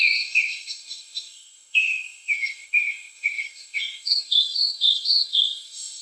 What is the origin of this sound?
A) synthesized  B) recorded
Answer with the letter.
A